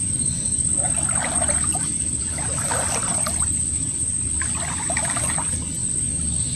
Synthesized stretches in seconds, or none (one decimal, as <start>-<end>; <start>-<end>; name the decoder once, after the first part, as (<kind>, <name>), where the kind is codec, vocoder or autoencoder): 5.8-6.6 (vocoder, BigVGAN v2)